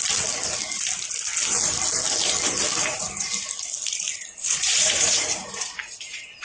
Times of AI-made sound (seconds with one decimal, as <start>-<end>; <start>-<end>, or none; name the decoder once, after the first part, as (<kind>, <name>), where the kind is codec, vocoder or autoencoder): 4.4-5.4 (vocoder, Vocos)